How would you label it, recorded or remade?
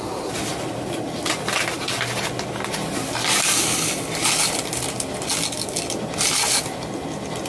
recorded